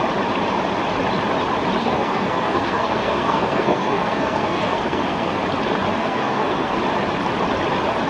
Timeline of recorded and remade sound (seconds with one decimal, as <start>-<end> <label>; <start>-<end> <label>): 0.0-1.8 recorded; 1.8-5.4 remade; 5.4-6.0 recorded; 6.0-6.8 remade; 6.8-8.1 recorded